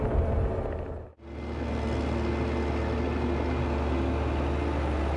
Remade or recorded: recorded